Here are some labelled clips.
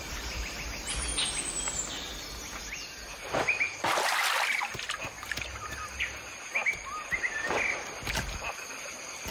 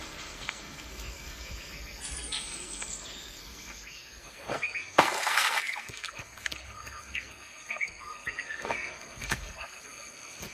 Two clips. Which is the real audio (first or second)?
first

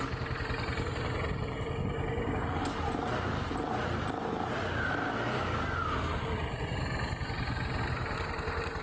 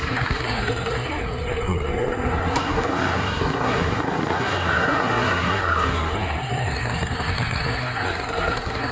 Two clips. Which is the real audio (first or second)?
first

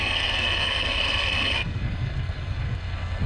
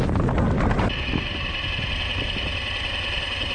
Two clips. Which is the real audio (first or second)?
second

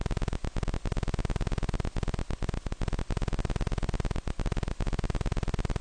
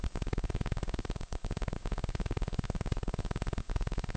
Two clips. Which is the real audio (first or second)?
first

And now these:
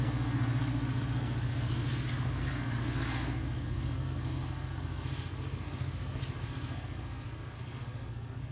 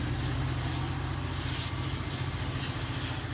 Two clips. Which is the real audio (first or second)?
second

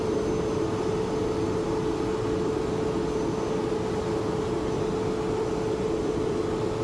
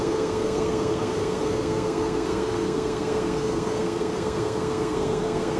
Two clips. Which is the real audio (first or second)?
first